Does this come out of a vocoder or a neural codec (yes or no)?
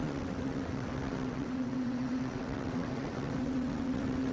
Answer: yes